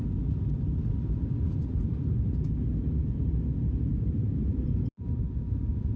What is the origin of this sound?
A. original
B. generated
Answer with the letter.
B